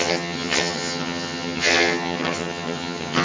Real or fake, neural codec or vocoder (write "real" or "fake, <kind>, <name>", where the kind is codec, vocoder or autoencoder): fake, vocoder, HiFi-GAN